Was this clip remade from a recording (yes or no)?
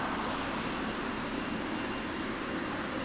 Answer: no